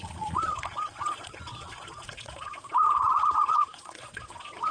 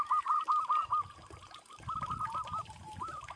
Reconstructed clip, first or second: first